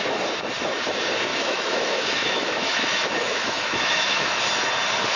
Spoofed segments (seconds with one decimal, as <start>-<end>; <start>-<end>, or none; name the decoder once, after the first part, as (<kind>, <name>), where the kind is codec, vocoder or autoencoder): 1.3-4.4 (autoencoder, DAC-VAE)